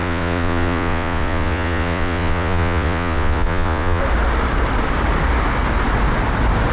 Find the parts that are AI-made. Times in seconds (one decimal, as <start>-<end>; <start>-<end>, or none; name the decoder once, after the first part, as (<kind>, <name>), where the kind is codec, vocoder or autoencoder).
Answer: 0.0-4.0 (vocoder, Vocos)